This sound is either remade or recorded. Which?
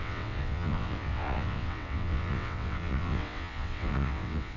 remade